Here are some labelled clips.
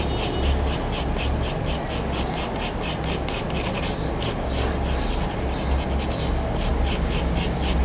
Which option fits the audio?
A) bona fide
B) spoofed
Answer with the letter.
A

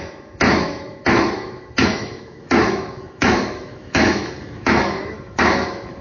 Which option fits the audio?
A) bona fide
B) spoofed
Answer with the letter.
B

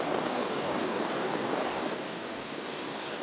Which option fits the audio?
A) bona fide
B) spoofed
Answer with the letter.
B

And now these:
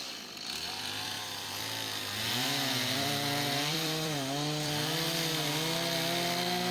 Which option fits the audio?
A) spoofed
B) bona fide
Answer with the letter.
A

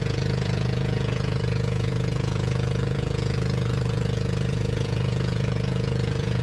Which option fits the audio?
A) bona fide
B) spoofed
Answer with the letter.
B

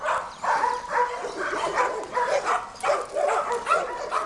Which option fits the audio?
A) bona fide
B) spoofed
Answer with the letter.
A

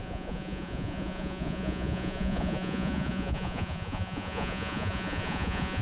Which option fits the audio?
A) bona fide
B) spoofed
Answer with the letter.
B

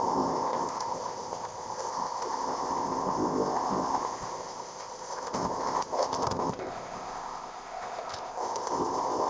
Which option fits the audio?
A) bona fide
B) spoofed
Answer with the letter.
B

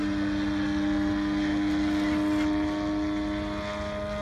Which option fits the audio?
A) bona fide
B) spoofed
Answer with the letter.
A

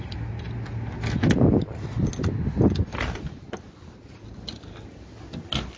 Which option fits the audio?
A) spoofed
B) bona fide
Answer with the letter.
B